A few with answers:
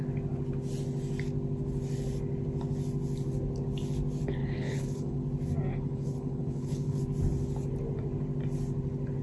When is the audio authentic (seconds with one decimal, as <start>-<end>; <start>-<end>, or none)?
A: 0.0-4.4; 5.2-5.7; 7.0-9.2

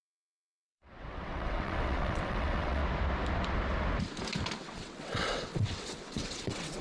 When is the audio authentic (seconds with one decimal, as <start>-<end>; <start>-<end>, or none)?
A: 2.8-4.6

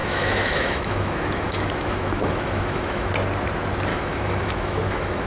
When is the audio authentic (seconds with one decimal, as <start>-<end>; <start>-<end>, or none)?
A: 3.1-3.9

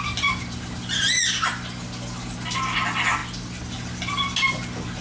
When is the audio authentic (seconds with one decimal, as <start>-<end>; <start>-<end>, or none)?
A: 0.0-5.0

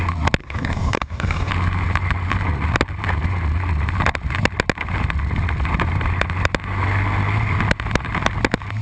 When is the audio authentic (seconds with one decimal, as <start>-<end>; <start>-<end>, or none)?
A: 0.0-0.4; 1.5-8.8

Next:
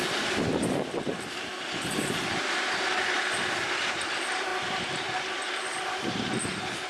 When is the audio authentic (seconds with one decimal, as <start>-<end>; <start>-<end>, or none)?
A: 1.5-2.1